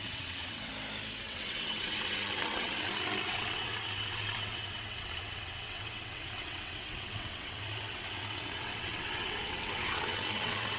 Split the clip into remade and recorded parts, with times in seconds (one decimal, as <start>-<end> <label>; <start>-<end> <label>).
0.0-0.7 remade; 0.7-1.2 recorded; 1.2-10.8 remade